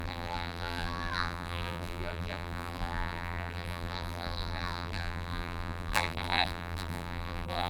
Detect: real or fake fake